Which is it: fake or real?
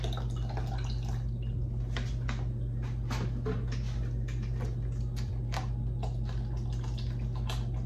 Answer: real